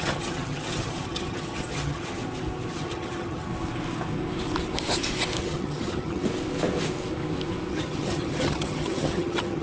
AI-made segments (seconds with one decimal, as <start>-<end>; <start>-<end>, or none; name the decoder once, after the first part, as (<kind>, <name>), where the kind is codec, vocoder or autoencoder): 0.0-2.2 (vocoder, HiFi-GAN); 2.7-3.5; 5.4-6.2; 7.7-9.6